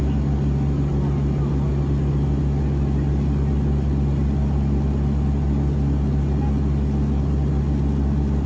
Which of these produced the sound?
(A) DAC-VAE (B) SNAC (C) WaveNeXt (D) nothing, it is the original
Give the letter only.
D